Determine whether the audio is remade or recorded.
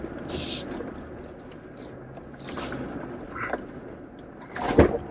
recorded